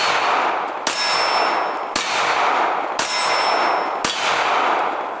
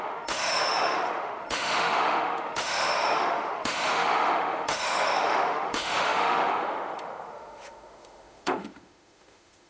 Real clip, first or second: first